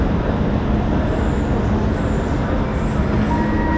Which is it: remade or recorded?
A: recorded